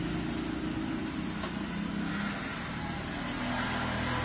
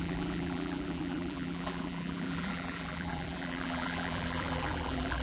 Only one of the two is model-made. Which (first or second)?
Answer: second